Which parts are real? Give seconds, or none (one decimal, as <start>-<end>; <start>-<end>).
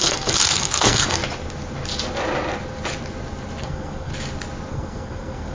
1.2-3.6; 4.1-4.7